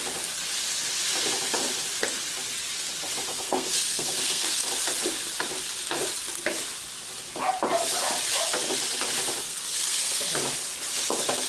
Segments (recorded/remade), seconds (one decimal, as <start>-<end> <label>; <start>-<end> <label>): 0.0-3.3 recorded; 3.3-4.7 remade; 4.7-9.4 recorded; 9.4-10.3 remade; 10.3-11.5 recorded